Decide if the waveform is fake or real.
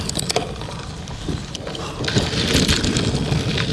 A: real